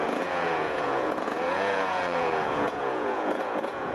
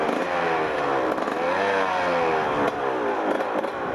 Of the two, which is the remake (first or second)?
first